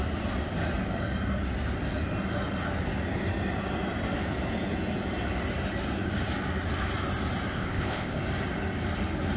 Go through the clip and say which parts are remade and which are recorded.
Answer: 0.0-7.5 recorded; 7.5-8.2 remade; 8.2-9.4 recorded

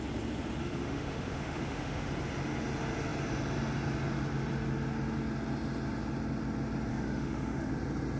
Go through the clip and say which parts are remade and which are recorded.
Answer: 0.0-0.6 recorded; 0.6-2.1 remade; 2.1-6.9 recorded; 6.9-7.7 remade; 7.7-8.2 recorded